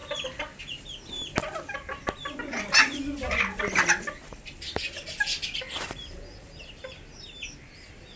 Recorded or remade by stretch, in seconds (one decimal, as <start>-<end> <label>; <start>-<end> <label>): 0.0-8.2 recorded